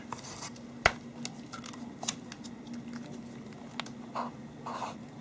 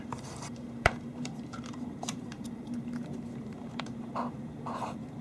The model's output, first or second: second